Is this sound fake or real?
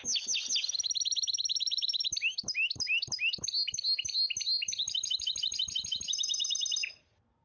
real